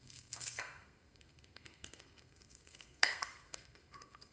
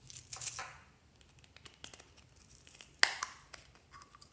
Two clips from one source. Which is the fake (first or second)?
first